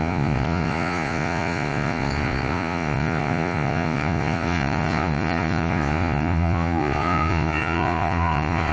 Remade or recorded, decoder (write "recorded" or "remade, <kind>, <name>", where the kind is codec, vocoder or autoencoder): remade, vocoder, Vocos